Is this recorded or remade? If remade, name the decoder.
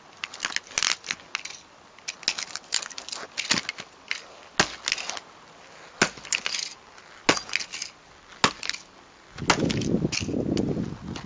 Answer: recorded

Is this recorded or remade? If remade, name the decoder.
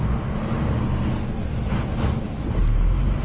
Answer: recorded